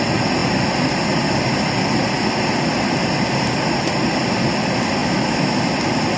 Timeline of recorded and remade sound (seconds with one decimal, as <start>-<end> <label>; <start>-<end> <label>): 0.0-5.0 recorded; 5.0-5.6 remade; 5.6-6.2 recorded